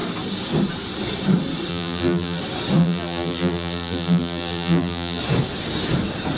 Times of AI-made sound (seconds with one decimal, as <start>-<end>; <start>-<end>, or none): 1.7-2.4; 2.8-5.2